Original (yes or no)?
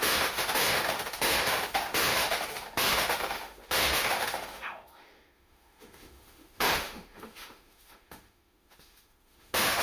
no